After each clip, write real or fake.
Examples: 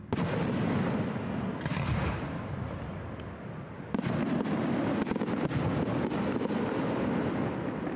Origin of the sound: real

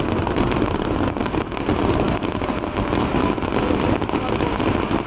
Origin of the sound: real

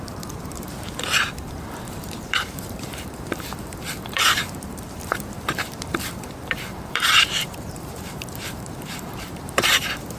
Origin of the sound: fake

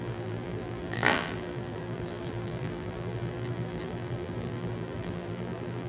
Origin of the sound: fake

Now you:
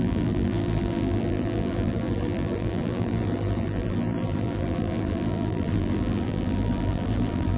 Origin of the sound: fake